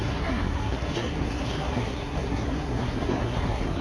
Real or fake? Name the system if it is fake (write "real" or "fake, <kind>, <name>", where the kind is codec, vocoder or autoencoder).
fake, codec, SNAC